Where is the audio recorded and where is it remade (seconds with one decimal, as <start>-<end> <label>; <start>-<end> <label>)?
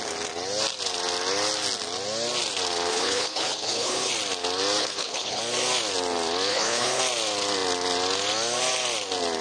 0.0-2.9 recorded; 2.9-4.1 remade; 4.1-4.8 recorded; 4.8-5.4 remade; 5.4-6.5 recorded; 6.5-7.0 remade; 7.0-9.4 recorded